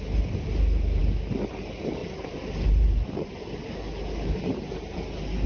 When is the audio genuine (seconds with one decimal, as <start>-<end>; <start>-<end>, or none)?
0.0-2.0; 3.8-5.5